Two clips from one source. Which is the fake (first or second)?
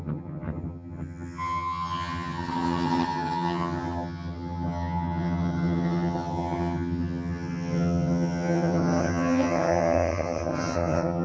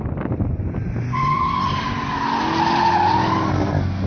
first